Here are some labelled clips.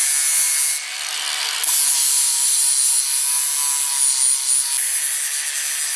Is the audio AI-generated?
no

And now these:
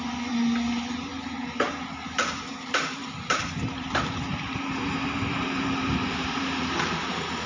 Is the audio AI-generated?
yes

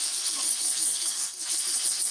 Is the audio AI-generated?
yes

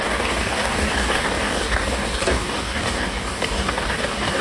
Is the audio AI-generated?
yes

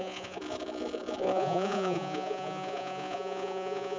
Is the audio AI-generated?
yes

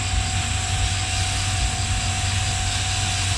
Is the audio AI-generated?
no